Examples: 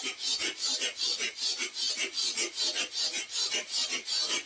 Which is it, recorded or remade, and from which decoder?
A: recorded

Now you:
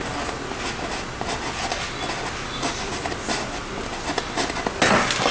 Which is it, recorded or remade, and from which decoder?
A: recorded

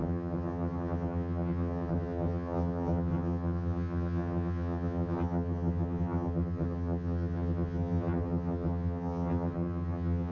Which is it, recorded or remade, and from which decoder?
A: remade, vocoder, HiFi-GAN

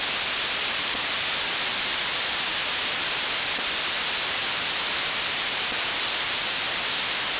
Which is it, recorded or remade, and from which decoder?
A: remade, vocoder, BigVGAN v2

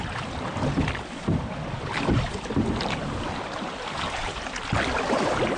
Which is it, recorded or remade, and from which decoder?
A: remade, vocoder, BigVGAN v2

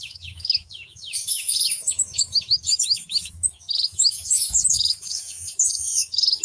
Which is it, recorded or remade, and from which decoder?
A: remade, autoencoder, DAC-VAE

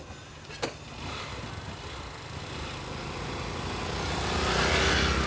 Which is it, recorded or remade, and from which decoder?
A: recorded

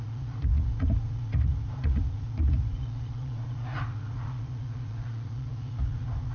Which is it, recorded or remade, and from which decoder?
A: remade, vocoder, Vocos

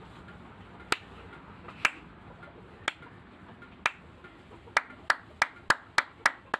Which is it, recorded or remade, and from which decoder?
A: recorded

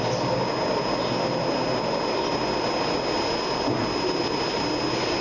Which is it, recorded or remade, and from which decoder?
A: recorded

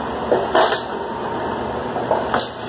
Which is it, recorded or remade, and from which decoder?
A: recorded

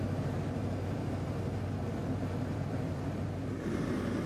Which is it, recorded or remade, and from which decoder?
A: remade, vocoder, BigVGAN v2